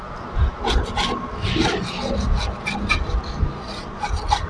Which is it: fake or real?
real